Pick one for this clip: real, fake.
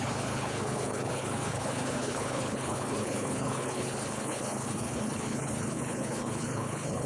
fake